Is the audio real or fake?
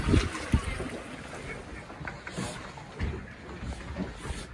real